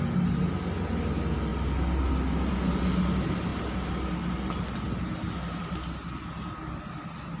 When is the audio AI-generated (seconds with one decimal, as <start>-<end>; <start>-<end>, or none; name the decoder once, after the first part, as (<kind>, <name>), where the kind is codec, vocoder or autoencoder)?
none